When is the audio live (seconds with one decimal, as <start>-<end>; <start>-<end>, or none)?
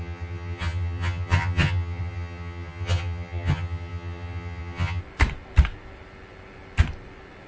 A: 5.0-7.5